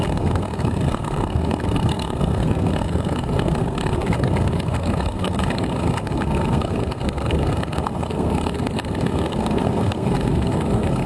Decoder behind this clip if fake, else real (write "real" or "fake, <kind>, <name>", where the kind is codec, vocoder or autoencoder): fake, codec, SNAC